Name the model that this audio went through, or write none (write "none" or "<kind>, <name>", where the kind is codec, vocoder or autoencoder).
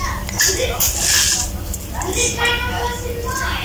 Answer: none